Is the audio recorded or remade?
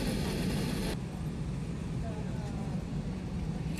recorded